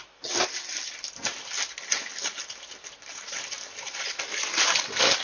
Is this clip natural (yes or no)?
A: yes